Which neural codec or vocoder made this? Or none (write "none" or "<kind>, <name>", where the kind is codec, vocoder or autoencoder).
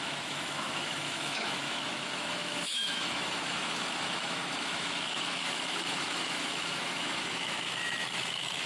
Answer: autoencoder, DAC-VAE